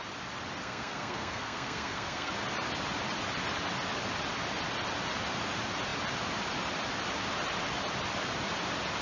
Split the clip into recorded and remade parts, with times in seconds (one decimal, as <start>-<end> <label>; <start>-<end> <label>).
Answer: 0.0-0.6 recorded; 0.6-2.3 remade; 2.3-9.0 recorded